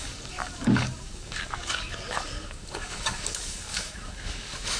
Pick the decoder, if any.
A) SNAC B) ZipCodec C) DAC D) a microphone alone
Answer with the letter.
C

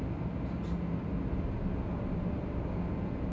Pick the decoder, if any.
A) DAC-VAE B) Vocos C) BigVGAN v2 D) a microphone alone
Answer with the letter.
D